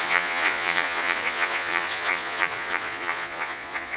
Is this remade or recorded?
remade